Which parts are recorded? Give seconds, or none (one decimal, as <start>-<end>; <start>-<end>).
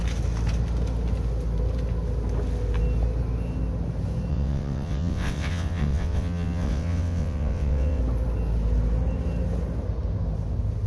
0.0-4.3; 8.0-10.9